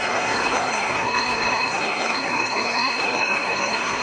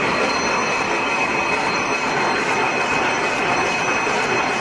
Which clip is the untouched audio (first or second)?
second